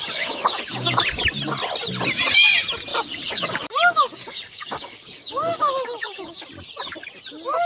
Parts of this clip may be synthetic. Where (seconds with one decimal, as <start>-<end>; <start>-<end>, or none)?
0.0-1.0; 2.9-6.4